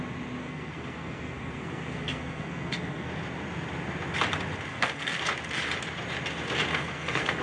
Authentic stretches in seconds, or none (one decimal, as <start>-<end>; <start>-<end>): 0.0-0.4; 3.1-4.7; 5.2-6.7